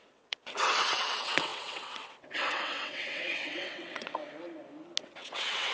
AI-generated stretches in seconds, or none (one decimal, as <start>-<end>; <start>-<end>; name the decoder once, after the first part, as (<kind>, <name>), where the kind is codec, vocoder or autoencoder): 0.0-4.2 (vocoder, WaveNeXt); 5.0-5.7